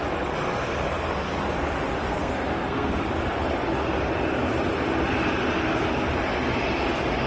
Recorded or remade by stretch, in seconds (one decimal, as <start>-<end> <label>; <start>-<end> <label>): 0.0-2.1 recorded; 2.1-3.0 remade; 3.0-7.3 recorded